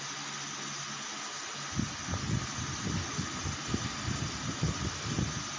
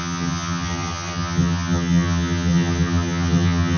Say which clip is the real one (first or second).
first